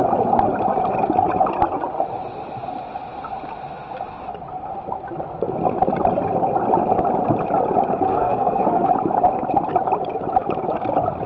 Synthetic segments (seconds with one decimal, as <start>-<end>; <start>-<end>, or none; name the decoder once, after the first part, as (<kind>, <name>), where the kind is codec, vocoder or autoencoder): 8.1-8.9 (codec, SNAC)